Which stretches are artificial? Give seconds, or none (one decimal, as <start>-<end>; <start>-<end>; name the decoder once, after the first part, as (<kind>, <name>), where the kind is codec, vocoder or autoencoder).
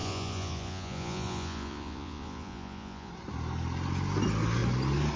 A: 0.0-3.1 (vocoder, Vocos)